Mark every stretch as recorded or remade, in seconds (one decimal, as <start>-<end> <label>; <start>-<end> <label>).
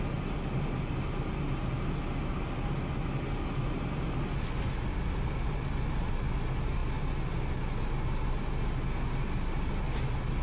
0.0-10.4 recorded